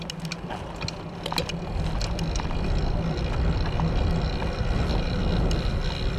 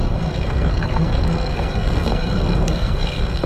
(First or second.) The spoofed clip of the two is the second